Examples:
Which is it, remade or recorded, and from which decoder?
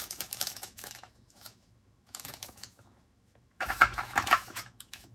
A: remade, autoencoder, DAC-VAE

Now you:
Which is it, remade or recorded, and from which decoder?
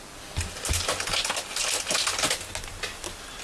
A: recorded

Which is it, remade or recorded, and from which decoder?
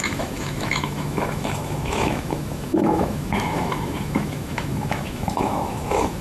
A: remade, autoencoder, DAC-VAE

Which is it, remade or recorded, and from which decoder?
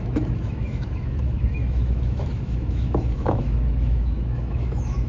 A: remade, autoencoder, DAC-VAE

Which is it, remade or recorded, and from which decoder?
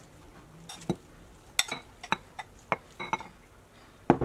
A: recorded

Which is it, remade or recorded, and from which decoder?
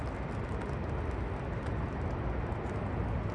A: recorded